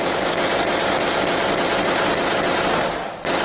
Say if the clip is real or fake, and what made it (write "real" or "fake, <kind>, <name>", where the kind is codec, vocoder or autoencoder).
real